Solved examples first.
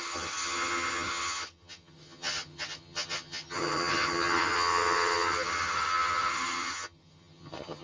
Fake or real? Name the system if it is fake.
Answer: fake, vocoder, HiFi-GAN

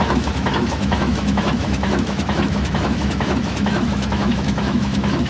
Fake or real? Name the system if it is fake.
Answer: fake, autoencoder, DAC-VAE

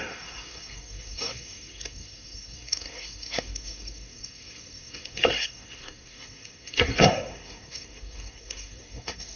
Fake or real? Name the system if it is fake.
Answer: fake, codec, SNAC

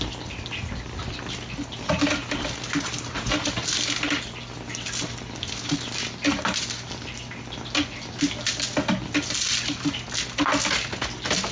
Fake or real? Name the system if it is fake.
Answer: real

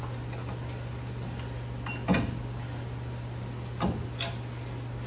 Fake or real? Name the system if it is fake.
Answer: real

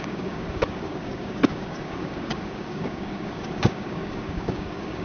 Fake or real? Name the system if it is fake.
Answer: fake, codec, DAC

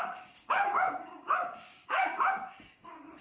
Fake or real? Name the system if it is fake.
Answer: fake, codec, DAC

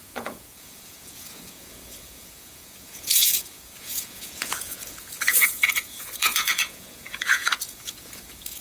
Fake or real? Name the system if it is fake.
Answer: fake, vocoder, Vocos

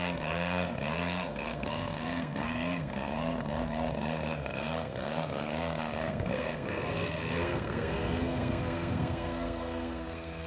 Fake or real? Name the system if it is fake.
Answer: fake, codec, SNAC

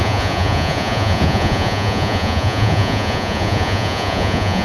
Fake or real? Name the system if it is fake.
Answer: fake, vocoder, Vocos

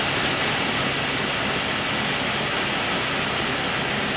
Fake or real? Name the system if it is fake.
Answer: real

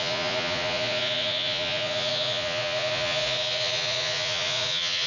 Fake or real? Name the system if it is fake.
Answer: fake, vocoder, Vocos